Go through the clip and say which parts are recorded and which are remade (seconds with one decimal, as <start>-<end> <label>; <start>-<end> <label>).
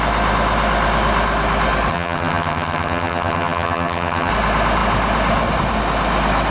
0.0-1.9 recorded; 1.9-4.3 remade; 4.3-6.5 recorded